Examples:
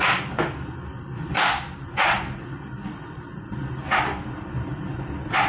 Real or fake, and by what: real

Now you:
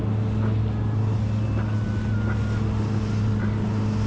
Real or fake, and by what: real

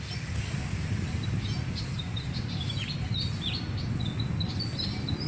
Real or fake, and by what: real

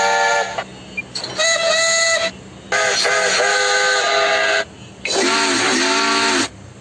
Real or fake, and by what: real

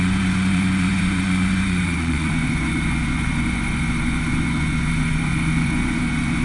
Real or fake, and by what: fake, vocoder, Vocos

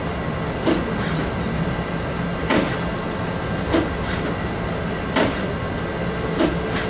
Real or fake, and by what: real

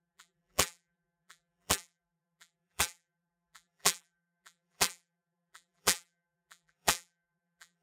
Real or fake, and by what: fake, vocoder, BigVGAN v2